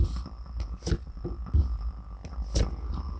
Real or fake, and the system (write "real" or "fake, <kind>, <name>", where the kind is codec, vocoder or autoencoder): real